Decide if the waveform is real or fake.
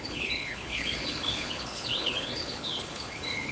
fake